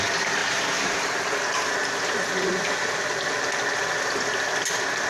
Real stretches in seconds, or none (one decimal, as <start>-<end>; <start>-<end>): 0.0-0.4; 3.5-5.1